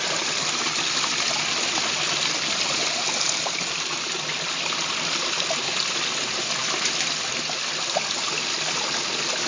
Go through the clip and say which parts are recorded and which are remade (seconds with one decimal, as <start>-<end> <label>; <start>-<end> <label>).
0.0-9.5 recorded